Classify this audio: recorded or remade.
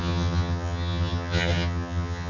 remade